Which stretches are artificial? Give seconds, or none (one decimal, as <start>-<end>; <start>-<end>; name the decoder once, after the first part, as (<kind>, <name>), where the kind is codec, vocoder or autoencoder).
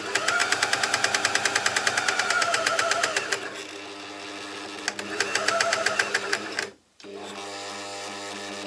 0.4-3.5 (vocoder, BigVGAN v2); 5.8-7.3